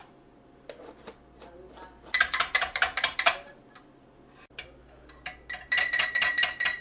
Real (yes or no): yes